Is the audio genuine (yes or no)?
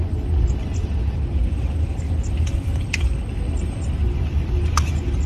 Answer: yes